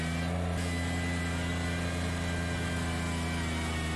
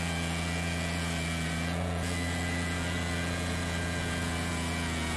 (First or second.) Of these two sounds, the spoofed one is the second